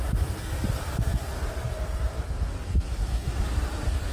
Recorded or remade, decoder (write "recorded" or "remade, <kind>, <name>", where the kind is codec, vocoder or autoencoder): recorded